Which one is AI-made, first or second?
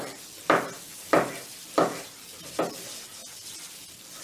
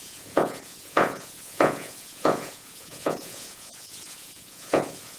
second